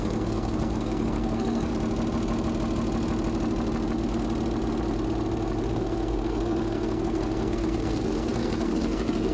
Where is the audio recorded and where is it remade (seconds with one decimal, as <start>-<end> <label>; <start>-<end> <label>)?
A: 0.0-1.7 remade; 1.7-5.7 recorded; 5.7-9.3 remade